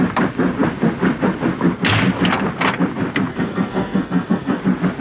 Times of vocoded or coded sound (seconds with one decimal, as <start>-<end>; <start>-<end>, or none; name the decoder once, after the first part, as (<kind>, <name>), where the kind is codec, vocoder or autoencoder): 3.3-4.6 (codec, SNAC)